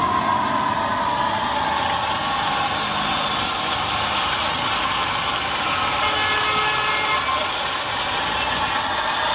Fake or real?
real